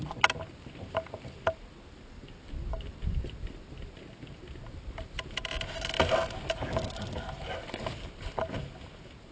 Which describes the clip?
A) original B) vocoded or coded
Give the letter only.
A